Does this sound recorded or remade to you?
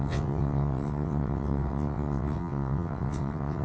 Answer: remade